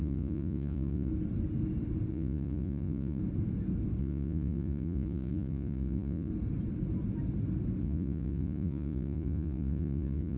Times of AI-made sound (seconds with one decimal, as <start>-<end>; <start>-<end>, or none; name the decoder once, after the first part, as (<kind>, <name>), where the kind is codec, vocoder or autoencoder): 0.0-1.1 (vocoder, Vocos); 2.1-3.2; 4.0-6.3; 7.8-10.4